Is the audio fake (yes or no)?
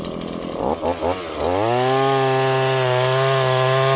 no